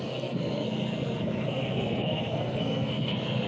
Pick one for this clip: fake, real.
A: fake